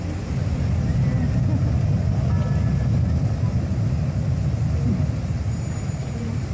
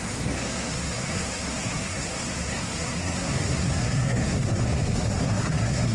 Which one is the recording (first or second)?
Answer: first